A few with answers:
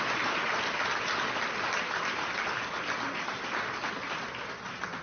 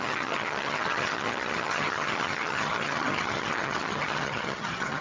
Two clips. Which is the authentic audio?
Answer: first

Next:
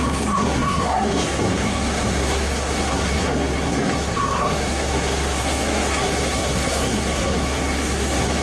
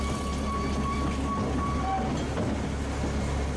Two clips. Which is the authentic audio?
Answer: second